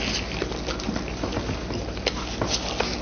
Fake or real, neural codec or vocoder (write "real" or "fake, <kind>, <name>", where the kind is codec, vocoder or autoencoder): real